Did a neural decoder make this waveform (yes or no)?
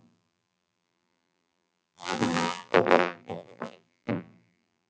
yes